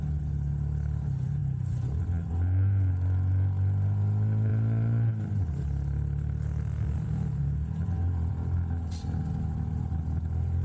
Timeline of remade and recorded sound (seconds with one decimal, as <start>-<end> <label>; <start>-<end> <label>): 0.0-10.6 recorded